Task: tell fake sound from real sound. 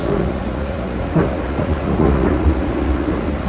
fake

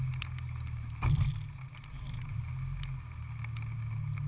real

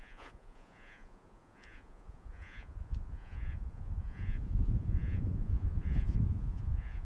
fake